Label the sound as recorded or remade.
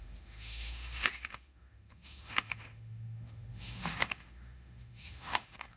remade